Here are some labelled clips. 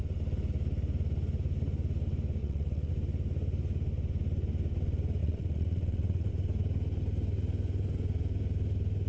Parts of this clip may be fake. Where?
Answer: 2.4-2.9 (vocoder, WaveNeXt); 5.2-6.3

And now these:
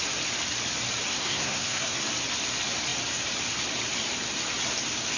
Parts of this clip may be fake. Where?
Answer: 1.1-2.0 (codec, SNAC)

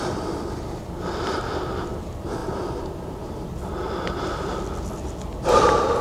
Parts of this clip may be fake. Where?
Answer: none